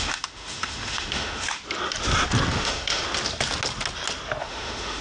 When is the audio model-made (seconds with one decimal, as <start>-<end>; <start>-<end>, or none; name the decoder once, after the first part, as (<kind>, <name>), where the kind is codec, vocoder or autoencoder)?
0.0-1.6 (autoencoder, DAC-VAE); 2.5-3.0; 4.4-5.0